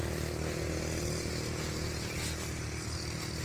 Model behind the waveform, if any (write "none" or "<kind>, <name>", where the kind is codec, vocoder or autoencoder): none